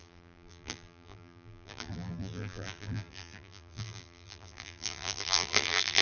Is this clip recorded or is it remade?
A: remade